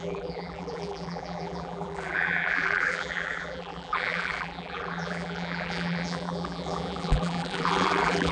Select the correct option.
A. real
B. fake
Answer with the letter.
B